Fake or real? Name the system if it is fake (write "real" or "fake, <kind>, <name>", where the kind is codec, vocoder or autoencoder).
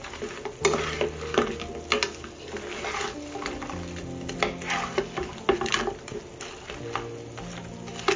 real